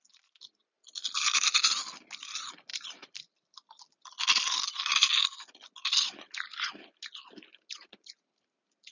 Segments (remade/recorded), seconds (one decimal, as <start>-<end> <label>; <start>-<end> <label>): 0.0-2.7 recorded; 2.7-3.8 remade; 3.8-8.9 recorded